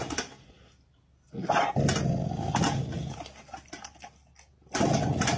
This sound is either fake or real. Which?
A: real